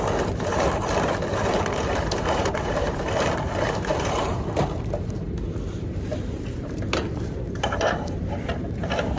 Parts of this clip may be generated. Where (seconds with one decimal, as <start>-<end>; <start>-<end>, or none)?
1.9-2.9; 3.9-5.3; 6.1-8.2